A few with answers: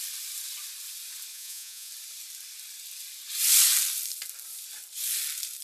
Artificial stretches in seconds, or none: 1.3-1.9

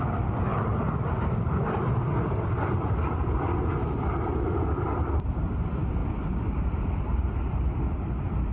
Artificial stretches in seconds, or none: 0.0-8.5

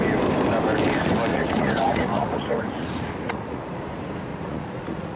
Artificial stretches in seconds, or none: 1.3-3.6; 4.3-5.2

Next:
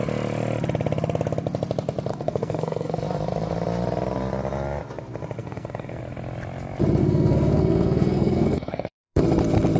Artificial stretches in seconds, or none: 2.1-3.0; 5.4-6.0; 7.0-9.2